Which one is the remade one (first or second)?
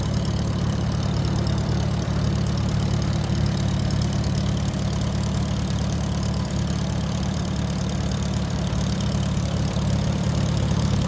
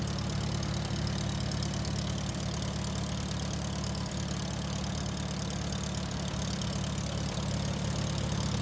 first